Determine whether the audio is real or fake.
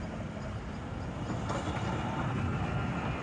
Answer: real